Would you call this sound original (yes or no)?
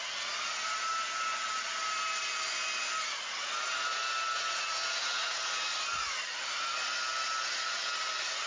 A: yes